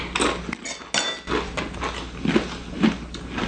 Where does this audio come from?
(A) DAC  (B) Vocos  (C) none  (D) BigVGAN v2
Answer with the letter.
C